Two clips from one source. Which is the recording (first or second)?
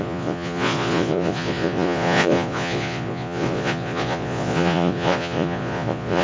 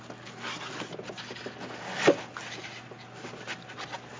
second